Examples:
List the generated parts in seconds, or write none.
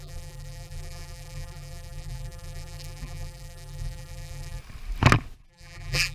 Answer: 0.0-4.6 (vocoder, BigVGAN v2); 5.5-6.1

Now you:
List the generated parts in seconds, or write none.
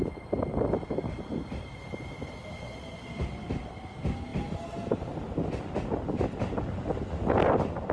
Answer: none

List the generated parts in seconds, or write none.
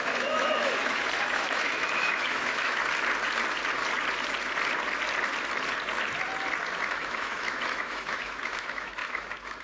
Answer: 0.0-2.8 (autoencoder, DAC-VAE); 6.9-9.6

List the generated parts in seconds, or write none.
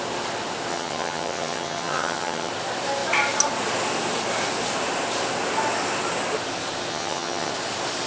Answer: 0.7-2.5 (vocoder, HiFi-GAN); 6.9-7.5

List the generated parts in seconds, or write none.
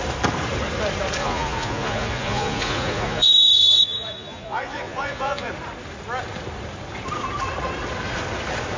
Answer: 1.2-5.5 (vocoder, Vocos)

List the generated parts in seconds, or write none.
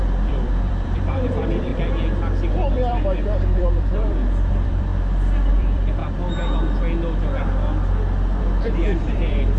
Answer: 0.0-1.7 (vocoder, BigVGAN v2); 2.5-4.9; 5.5-6.0; 8.4-9.6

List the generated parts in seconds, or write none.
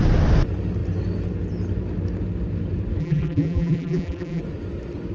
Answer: 3.0-4.4 (vocoder, BigVGAN v2)